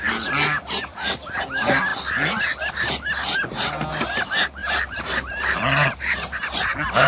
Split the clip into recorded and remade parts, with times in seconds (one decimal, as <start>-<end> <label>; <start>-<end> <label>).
0.0-4.6 recorded; 4.6-5.6 remade; 5.6-7.1 recorded